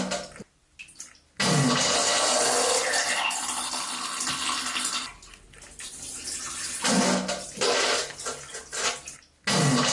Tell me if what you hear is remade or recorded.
recorded